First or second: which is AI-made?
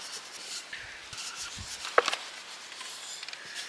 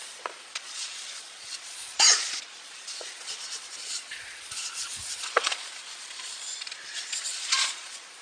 second